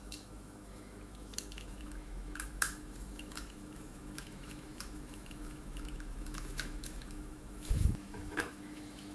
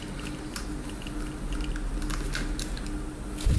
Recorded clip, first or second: second